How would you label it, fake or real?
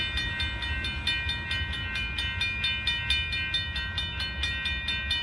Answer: real